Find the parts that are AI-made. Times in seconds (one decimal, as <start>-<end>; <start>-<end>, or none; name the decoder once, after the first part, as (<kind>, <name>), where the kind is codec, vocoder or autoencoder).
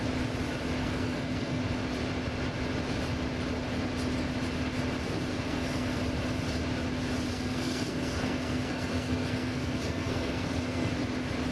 0.8-1.6 (codec, SNAC); 5.3-6.0; 7.3-10.9